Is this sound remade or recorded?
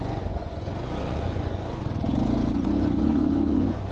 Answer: remade